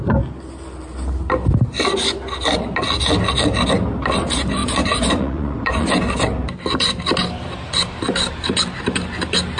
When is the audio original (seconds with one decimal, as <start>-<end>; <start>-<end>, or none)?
0.0-4.6; 5.9-9.6